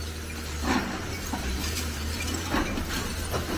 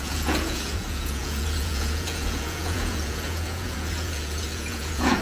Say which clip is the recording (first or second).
first